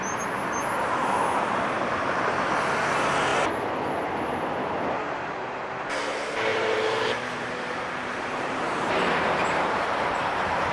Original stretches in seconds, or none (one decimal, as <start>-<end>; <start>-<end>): 0.0-6.5